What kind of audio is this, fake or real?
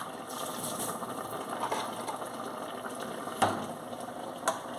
real